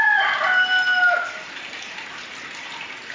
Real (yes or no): yes